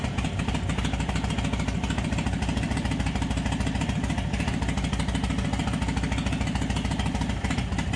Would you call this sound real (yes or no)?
yes